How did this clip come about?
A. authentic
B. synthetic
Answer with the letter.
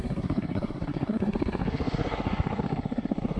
B